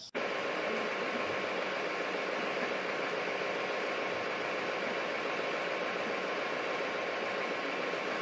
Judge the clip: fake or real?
real